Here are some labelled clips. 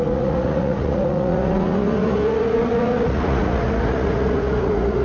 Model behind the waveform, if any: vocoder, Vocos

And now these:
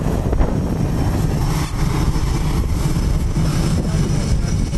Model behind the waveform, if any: none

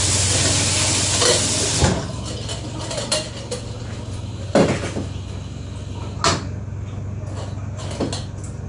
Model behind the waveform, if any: none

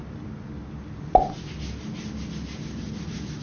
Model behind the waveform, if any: none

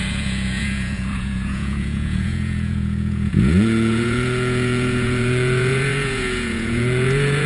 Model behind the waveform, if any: vocoder, Vocos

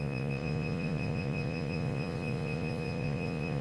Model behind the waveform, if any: vocoder, Vocos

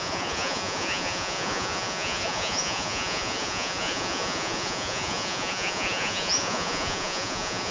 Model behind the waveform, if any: vocoder, Vocos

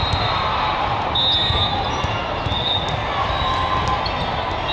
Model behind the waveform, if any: none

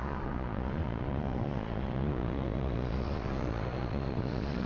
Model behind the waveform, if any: vocoder, Vocos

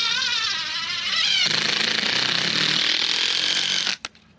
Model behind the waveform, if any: none